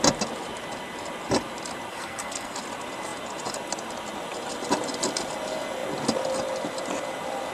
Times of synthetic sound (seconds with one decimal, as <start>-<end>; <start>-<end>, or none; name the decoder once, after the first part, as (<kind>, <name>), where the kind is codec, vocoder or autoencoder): 1.9-2.6 (codec, SNAC)